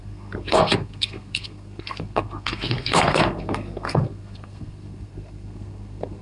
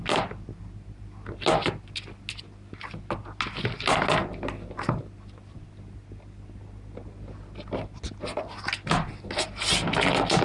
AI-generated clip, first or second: first